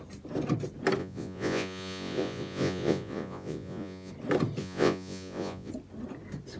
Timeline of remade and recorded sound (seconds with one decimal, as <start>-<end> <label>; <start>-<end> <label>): 0.0-1.0 recorded; 1.0-4.1 remade; 4.1-4.6 recorded; 4.6-5.7 remade; 5.7-6.6 recorded